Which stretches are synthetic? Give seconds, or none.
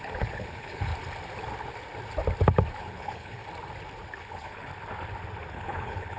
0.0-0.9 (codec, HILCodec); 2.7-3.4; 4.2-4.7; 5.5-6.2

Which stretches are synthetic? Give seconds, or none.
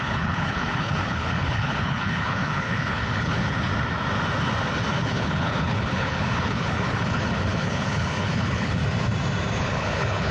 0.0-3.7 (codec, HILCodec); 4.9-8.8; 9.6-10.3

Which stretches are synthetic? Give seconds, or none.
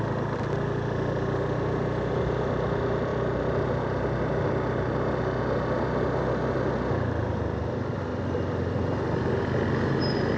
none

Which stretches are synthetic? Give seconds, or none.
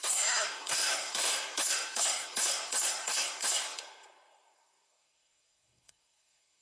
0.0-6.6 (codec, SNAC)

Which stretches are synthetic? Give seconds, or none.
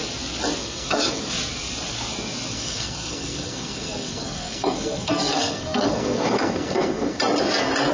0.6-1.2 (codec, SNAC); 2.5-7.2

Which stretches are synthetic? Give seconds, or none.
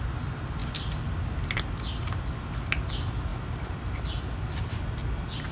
none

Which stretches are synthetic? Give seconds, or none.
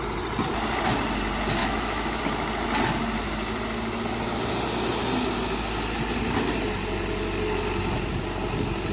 1.6-2.2 (autoencoder, DAC-VAE)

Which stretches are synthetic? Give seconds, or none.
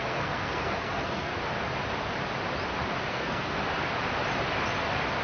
0.0-1.3 (codec, SNAC); 3.1-3.6